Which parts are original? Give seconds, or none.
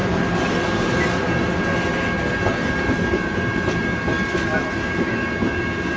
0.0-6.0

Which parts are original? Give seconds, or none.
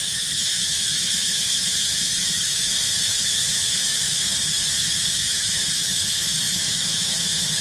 none